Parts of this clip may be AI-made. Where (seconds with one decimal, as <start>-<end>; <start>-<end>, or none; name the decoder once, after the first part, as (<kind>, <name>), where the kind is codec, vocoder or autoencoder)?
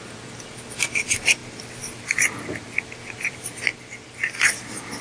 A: 0.0-1.4 (vocoder, BigVGAN v2); 3.3-3.7; 4.4-5.0